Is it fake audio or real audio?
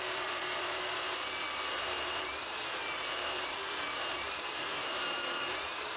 fake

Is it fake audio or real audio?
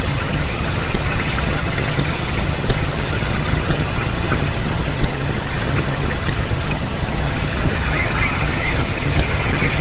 fake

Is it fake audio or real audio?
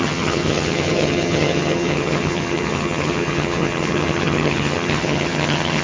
fake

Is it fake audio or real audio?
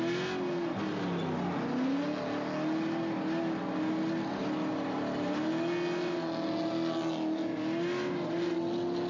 real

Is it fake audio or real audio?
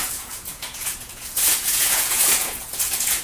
fake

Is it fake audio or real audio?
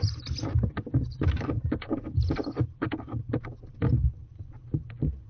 real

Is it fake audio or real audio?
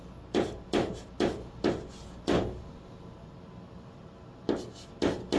real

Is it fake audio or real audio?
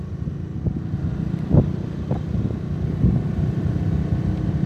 fake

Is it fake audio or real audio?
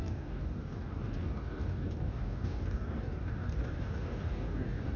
fake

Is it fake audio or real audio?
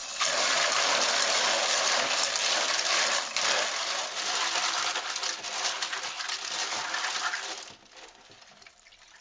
real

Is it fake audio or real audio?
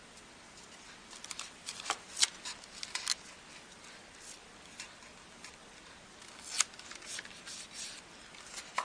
real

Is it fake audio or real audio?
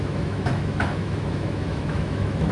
fake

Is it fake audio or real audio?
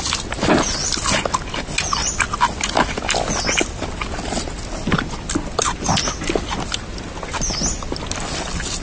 real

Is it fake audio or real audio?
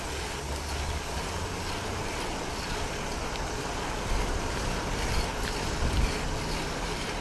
real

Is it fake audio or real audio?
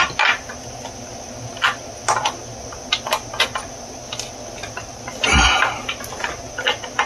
real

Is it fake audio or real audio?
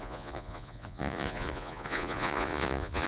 fake